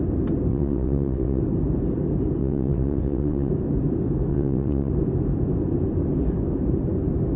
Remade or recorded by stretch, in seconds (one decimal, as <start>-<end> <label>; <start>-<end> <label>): 0.0-0.5 recorded; 0.5-1.4 remade; 1.4-2.4 recorded; 2.4-3.5 remade; 3.5-4.3 recorded; 4.3-4.9 remade; 4.9-7.4 recorded